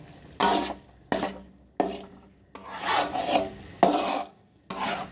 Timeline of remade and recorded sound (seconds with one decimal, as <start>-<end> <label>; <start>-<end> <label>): 0.0-4.1 recorded; 4.1-4.6 remade; 4.6-5.1 recorded